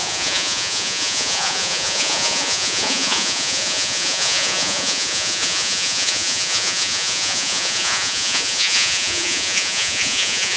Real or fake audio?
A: fake